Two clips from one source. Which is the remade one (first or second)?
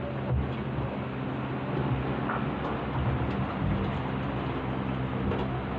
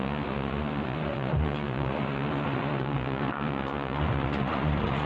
second